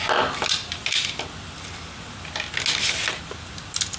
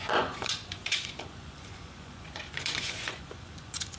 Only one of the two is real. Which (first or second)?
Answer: first